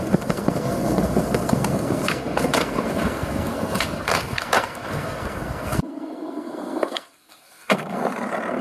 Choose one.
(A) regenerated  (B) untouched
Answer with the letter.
A